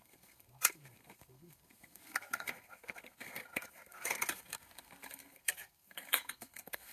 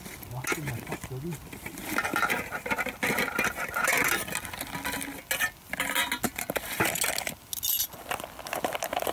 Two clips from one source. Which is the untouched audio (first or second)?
second